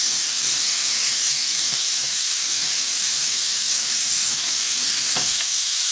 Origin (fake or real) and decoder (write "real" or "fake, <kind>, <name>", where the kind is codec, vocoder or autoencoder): fake, codec, DAC